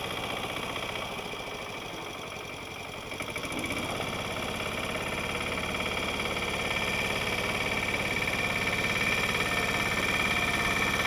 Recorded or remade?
recorded